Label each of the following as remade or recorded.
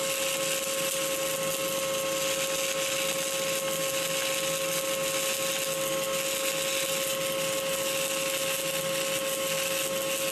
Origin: recorded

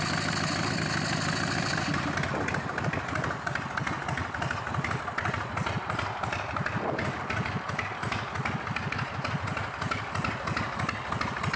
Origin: recorded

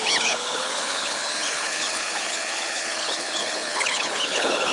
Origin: remade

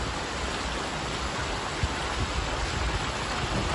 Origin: recorded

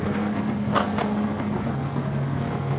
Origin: remade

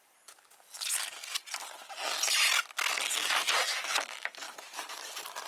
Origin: recorded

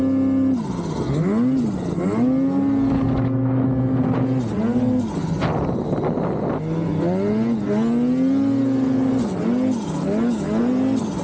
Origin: recorded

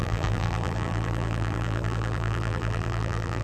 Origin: remade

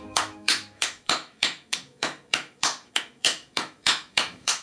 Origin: remade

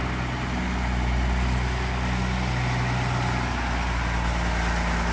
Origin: recorded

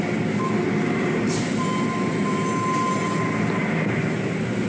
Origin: recorded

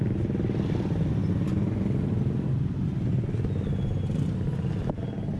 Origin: recorded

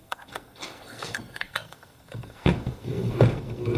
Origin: remade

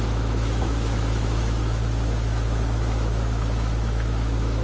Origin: remade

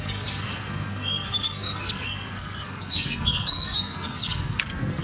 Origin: remade